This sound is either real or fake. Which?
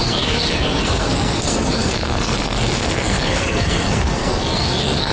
fake